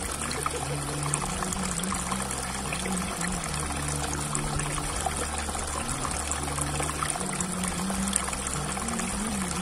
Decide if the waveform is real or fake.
real